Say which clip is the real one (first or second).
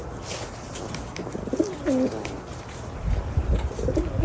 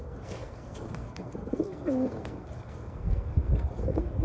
first